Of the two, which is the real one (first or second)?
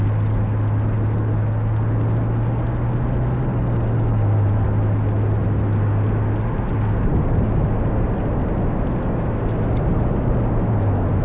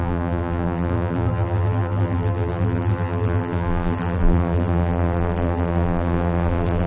first